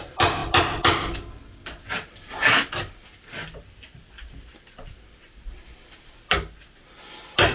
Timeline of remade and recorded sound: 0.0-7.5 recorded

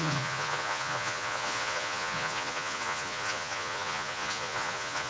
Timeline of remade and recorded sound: 0.0-5.1 remade

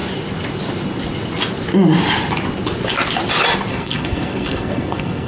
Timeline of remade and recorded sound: 0.0-3.7 recorded; 3.7-5.3 remade

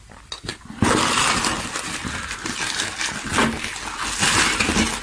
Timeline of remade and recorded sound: 0.0-5.0 recorded

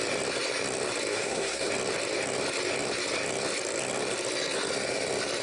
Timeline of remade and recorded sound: 0.0-1.1 recorded; 1.1-1.7 remade; 1.7-5.4 recorded

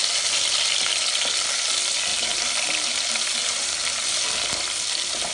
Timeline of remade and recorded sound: 0.0-0.8 remade; 0.8-2.1 recorded; 2.1-5.3 remade

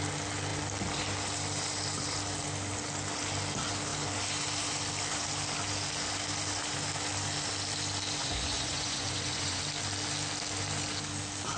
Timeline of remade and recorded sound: 0.0-8.2 recorded; 8.2-9.6 remade; 9.6-11.6 recorded

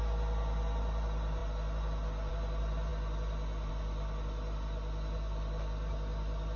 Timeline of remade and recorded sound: 0.0-6.6 recorded